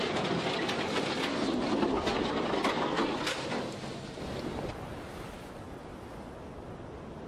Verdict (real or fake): real